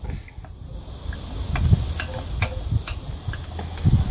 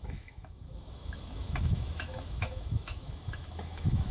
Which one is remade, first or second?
second